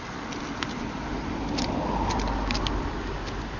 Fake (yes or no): no